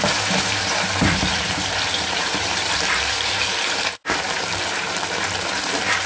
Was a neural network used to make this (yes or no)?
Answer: yes